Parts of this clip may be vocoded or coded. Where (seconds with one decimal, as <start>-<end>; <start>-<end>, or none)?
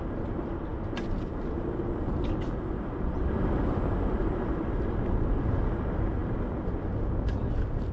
none